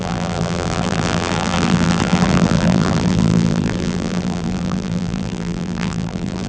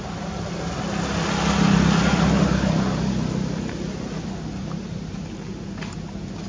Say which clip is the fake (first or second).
first